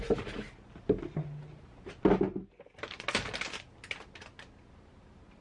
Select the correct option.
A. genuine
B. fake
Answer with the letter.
A